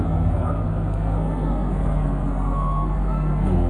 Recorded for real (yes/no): no